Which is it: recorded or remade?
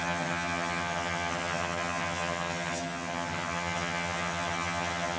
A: remade